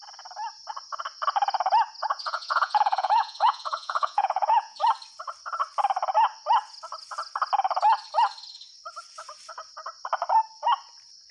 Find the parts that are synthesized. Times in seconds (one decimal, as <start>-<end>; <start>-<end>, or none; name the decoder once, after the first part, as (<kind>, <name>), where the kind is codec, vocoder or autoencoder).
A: 2.0-4.8 (vocoder, Vocos)